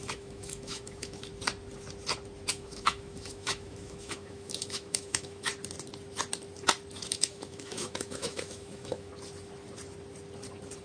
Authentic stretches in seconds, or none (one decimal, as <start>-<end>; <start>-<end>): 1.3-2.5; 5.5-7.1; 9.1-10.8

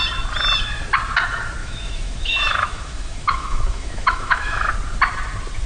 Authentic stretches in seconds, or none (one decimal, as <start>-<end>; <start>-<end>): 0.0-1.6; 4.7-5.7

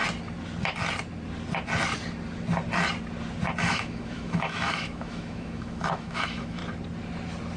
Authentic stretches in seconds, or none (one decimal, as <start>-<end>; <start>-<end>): 0.0-3.6; 6.6-7.6

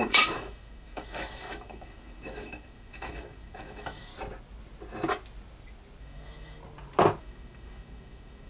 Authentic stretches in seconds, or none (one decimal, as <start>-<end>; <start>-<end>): 4.1-6.0; 6.6-7.2